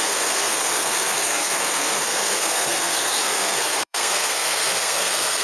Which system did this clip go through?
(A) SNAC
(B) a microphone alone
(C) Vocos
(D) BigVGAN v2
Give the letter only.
A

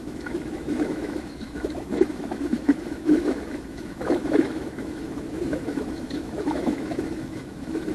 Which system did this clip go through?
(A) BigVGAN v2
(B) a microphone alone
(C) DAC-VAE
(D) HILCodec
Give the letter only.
C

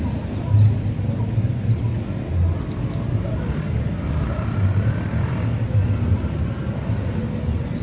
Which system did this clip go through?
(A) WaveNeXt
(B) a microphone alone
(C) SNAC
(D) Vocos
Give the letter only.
B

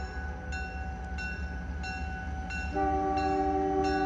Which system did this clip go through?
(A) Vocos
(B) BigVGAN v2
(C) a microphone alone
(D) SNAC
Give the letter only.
C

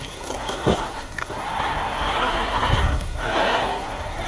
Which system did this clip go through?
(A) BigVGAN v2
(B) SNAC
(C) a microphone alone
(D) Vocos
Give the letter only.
B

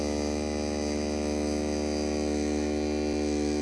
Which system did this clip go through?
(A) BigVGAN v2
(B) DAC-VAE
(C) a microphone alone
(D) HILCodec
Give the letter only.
C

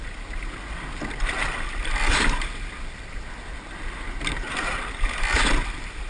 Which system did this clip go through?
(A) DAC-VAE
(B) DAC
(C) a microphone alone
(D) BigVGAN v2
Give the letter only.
C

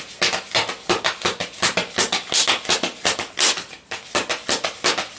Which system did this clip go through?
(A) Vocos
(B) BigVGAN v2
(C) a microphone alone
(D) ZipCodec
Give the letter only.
C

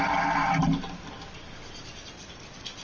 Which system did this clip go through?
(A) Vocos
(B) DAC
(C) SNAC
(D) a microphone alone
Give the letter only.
D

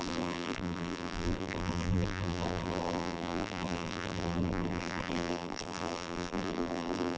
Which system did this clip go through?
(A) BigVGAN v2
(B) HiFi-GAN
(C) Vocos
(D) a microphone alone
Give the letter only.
A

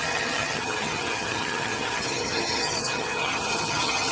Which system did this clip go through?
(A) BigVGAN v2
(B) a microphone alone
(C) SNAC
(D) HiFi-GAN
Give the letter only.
D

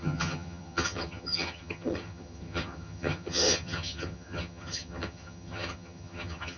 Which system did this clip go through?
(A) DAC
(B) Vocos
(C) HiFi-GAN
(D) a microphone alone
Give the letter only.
C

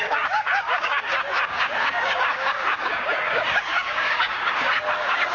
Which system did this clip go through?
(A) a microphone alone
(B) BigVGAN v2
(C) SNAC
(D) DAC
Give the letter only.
D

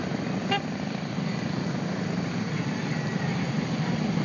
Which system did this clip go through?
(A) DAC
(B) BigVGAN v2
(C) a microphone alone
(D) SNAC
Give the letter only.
B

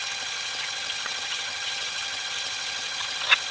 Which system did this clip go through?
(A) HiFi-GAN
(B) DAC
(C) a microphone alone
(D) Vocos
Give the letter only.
A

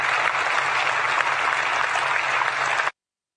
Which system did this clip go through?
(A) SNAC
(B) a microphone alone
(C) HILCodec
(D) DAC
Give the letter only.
B